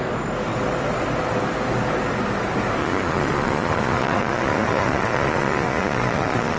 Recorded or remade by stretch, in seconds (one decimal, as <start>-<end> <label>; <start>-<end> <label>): 0.0-2.8 recorded; 2.8-6.6 remade